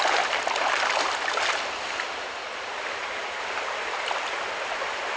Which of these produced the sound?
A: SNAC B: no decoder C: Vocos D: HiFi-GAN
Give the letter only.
B